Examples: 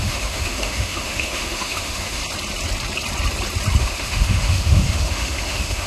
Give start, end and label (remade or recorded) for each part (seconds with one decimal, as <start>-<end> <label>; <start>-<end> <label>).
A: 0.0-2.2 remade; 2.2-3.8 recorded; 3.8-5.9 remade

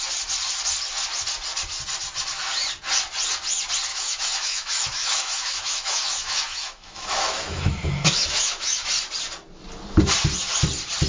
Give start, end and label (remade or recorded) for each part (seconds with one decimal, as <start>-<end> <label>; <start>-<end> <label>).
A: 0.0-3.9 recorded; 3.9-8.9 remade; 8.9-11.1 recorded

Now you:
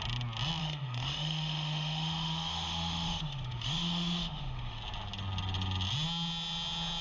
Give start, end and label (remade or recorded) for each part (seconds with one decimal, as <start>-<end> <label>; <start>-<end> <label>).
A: 0.0-0.6 recorded; 0.6-4.8 remade; 4.8-7.0 recorded

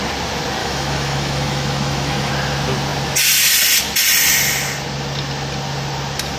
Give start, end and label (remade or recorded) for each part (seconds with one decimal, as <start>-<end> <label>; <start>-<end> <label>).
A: 0.0-0.6 recorded; 0.6-2.3 remade; 2.3-6.4 recorded

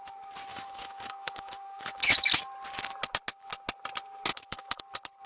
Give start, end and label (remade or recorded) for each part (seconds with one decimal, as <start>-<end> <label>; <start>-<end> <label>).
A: 0.0-0.5 recorded; 0.5-2.5 remade; 2.5-4.3 recorded; 4.3-4.8 remade; 4.8-5.3 recorded

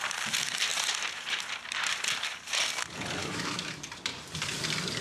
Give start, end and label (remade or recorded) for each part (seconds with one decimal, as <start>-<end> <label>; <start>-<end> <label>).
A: 0.0-3.2 recorded; 3.2-3.8 remade; 3.8-5.0 recorded